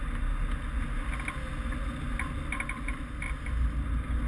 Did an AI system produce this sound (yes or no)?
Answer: no